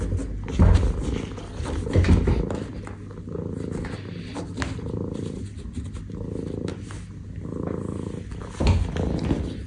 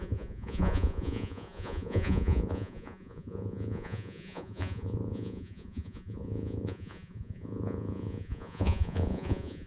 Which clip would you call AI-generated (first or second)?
second